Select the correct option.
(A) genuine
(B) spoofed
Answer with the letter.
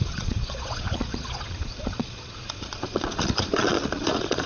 B